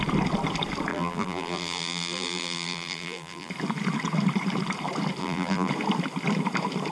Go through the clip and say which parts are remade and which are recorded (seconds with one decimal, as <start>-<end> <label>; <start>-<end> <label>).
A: 0.0-0.9 recorded; 0.9-3.5 remade; 3.5-5.2 recorded; 5.2-5.7 remade; 5.7-6.9 recorded